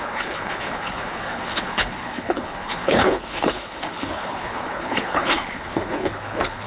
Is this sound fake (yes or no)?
yes